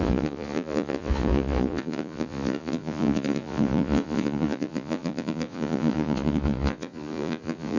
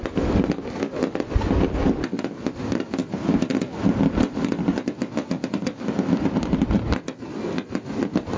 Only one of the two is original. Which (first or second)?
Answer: second